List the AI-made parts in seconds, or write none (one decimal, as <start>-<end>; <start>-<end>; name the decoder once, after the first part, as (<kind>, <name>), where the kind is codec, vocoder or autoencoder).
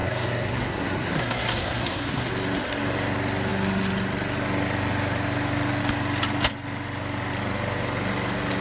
0.0-2.3 (codec, SNAC)